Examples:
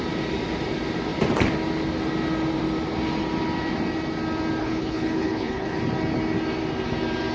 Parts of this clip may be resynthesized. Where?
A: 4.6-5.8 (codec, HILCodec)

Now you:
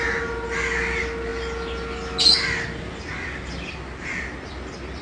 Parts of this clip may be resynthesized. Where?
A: none

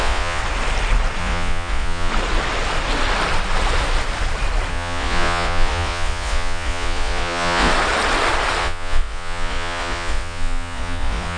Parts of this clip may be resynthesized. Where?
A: 0.0-0.4 (vocoder, Vocos); 1.2-2.1; 4.7-7.7; 8.6-11.4

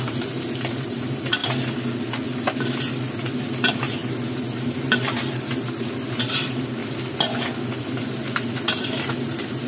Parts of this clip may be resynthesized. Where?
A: 0.0-1.4 (vocoder, BigVGAN v2); 2.8-6.8; 7.7-9.7

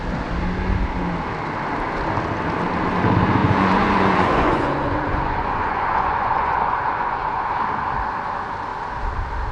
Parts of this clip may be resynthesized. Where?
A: 3.4-7.5 (vocoder, Vocos)